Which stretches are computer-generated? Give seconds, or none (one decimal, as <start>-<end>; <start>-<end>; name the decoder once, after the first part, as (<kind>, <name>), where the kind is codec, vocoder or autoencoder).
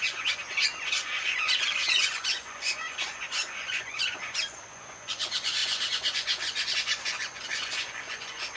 0.0-8.6 (vocoder, Vocos)